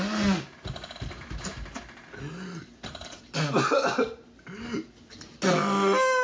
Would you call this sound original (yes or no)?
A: yes